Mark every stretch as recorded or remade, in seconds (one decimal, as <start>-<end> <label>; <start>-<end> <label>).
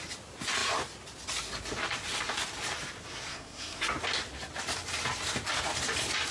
0.0-3.3 recorded; 3.3-3.8 remade; 3.8-6.3 recorded